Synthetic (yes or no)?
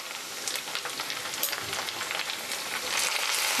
no